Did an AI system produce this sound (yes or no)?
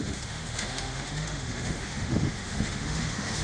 yes